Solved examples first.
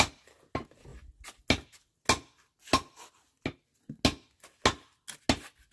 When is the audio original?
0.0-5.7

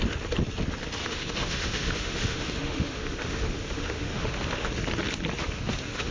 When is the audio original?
0.0-1.0; 4.7-5.4